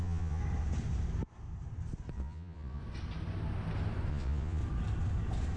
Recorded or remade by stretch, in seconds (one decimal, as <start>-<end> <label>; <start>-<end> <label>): 0.0-0.4 remade; 0.4-2.1 recorded; 2.1-2.8 remade; 2.8-4.1 recorded; 4.1-4.6 remade; 4.6-5.6 recorded

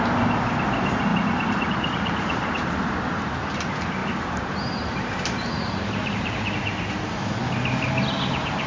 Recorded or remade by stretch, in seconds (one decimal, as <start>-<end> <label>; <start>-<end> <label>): 0.0-1.1 recorded; 1.1-2.9 remade; 2.9-4.0 recorded; 4.0-6.9 remade; 6.9-8.7 recorded